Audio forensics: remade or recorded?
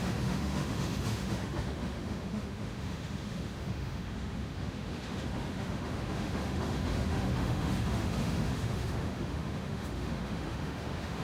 remade